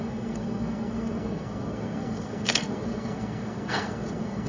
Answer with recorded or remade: remade